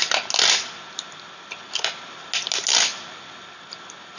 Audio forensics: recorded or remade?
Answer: recorded